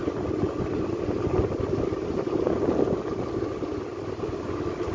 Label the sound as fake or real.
real